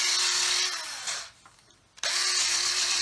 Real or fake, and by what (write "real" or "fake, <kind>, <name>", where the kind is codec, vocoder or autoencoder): real